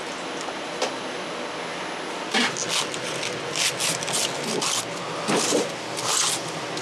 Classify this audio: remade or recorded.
recorded